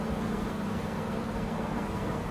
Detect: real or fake fake